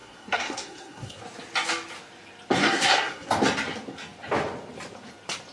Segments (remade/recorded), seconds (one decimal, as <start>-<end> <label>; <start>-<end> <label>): 0.0-1.2 remade; 1.2-2.6 recorded; 2.6-3.3 remade; 3.3-5.5 recorded